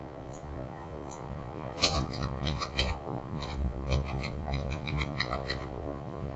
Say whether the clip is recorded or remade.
remade